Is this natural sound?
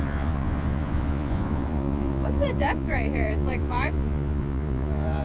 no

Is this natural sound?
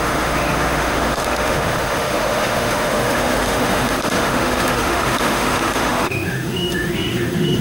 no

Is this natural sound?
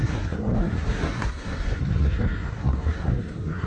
no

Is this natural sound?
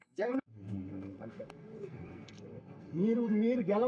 no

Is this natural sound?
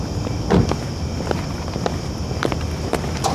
yes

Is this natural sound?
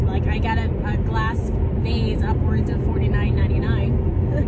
yes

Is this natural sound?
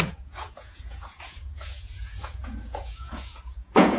no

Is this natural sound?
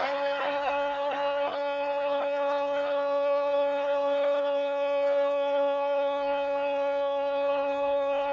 no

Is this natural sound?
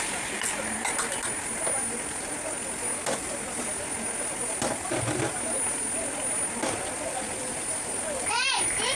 yes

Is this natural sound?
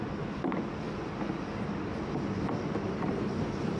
yes